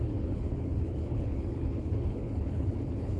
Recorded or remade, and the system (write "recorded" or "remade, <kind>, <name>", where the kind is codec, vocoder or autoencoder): remade, codec, HILCodec